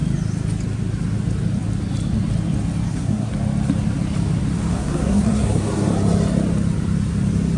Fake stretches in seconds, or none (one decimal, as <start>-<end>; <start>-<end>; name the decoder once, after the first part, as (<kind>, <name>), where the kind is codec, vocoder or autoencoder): 2.9-3.3 (codec, SNAC); 4.7-5.9